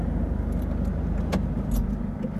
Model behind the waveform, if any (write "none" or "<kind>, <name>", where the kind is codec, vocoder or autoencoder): none